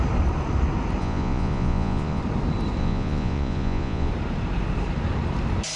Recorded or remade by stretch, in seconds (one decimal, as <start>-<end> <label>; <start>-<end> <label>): 0.0-1.0 recorded; 1.0-2.2 remade; 2.2-2.8 recorded; 2.8-4.1 remade; 4.1-5.8 recorded